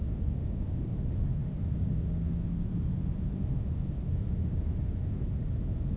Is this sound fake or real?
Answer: fake